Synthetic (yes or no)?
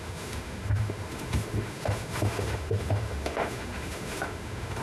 yes